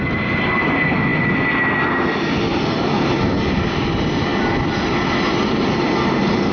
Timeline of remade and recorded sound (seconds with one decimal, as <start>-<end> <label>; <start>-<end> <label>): 0.0-6.5 recorded